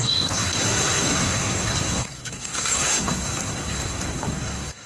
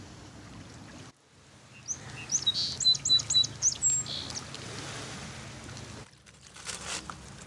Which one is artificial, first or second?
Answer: first